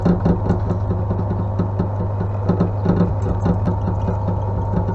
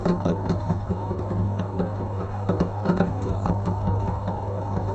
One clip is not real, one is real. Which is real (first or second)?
first